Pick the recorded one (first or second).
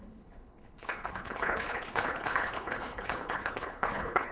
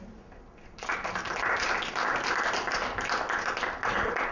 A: second